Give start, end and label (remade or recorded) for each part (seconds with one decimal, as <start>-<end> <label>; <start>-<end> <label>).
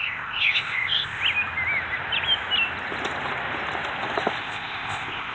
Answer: 0.0-1.2 remade; 1.2-4.4 recorded; 4.4-5.3 remade